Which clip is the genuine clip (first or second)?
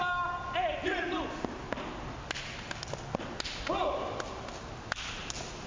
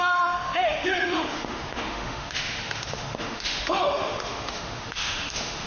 first